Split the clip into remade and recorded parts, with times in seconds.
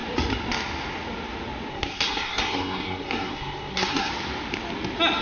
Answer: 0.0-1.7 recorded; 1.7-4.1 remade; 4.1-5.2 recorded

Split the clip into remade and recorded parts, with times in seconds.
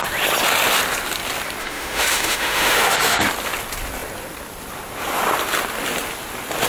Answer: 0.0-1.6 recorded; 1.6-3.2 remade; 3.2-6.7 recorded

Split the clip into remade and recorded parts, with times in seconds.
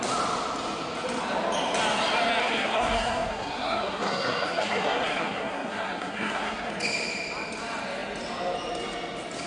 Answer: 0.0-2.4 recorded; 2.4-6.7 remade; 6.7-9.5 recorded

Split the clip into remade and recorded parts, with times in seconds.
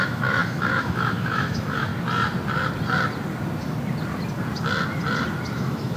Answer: 0.0-1.9 remade; 1.9-5.5 recorded; 5.5-6.0 remade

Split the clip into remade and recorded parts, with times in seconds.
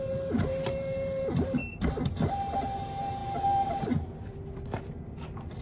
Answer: 0.0-1.6 remade; 1.6-2.3 recorded; 2.3-5.6 remade